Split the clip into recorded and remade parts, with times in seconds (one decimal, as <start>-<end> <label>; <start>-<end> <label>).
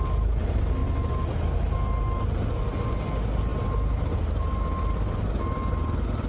0.0-6.3 recorded